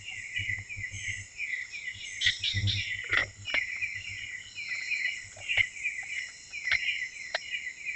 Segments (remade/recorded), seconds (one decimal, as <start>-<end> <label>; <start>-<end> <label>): 0.0-8.0 recorded